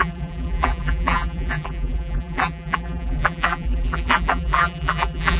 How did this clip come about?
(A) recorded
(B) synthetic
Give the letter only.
B